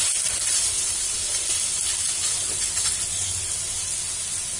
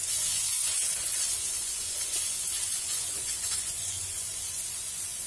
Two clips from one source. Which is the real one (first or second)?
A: first